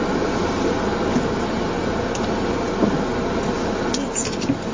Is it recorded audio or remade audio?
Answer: recorded